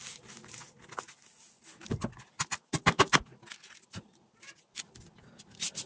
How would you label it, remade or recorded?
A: recorded